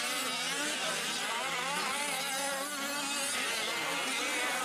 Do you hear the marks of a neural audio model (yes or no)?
no